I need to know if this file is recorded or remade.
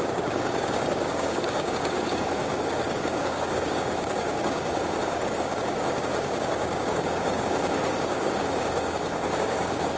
remade